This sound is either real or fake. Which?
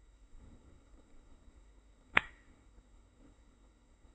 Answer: fake